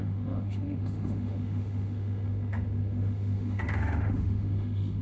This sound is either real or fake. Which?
fake